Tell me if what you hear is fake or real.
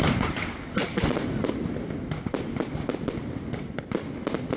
real